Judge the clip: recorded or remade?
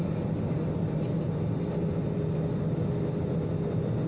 recorded